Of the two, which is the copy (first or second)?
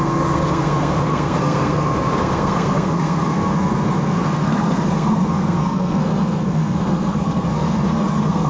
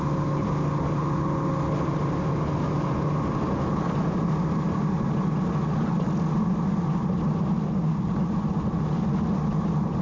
first